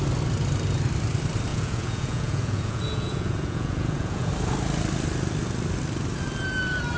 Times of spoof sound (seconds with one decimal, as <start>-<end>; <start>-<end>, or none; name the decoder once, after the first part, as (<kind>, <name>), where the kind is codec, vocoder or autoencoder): 1.5-4.3 (vocoder, Vocos)